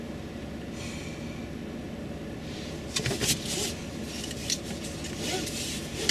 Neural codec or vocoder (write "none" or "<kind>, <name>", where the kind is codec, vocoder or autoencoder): none